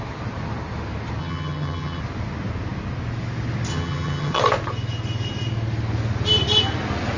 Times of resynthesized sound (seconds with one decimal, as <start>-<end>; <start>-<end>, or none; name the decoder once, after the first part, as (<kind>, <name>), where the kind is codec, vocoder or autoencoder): 1.2-2.0 (vocoder, HiFi-GAN); 3.7-4.4